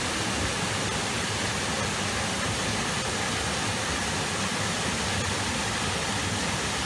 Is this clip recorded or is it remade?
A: recorded